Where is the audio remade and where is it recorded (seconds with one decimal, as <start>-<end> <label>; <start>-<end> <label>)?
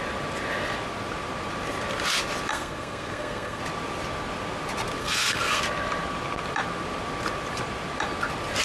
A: 0.0-2.5 recorded; 2.5-3.6 remade; 3.6-5.0 recorded; 5.0-5.6 remade; 5.6-8.6 recorded